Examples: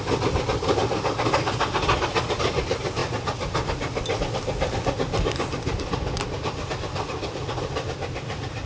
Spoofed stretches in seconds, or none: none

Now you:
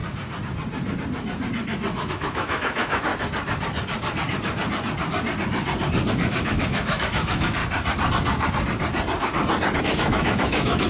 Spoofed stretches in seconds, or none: 2.1-3.1 (autoencoder, DAC-VAE); 6.1-7.6; 9.8-10.9

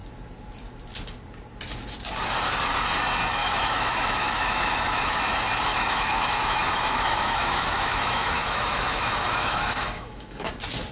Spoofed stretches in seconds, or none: 3.4-5.2 (autoencoder, DAC-VAE); 5.7-10.5

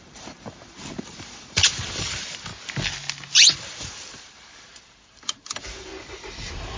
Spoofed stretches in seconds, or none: 0.0-2.5 (vocoder, BigVGAN v2); 3.5-5.9